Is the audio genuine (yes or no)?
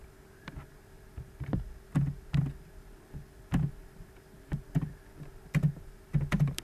yes